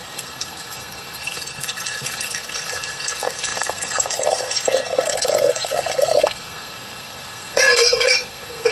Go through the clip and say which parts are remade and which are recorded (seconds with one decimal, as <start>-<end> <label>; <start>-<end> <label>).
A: 0.0-8.7 remade